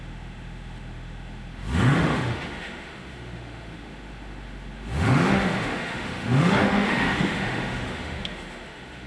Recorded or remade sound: remade